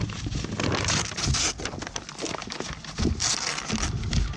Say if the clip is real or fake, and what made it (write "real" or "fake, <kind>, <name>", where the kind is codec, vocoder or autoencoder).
real